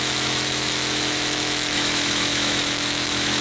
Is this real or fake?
fake